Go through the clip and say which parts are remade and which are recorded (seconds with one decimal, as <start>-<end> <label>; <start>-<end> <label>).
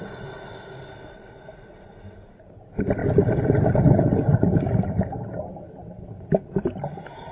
0.0-7.3 recorded